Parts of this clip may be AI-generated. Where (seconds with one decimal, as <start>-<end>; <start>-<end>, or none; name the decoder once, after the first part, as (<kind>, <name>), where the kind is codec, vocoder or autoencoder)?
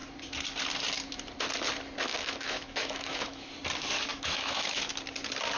2.1-3.5 (autoencoder, DAC-VAE); 4.1-4.9